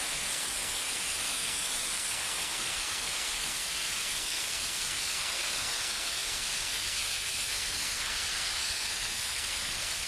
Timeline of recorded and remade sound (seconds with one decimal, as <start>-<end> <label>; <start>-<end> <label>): 0.0-10.1 remade